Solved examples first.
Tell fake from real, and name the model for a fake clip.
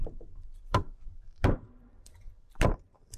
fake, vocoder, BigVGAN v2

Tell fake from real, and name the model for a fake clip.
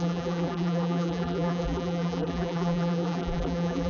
fake, vocoder, BigVGAN v2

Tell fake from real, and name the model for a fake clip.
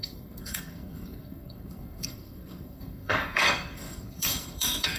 fake, codec, SNAC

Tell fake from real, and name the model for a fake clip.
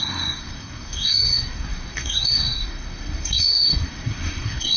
fake, codec, SNAC